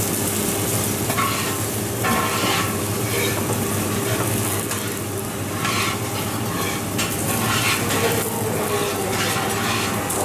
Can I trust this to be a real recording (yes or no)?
yes